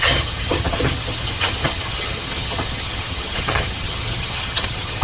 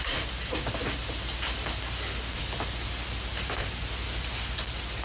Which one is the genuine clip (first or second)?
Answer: second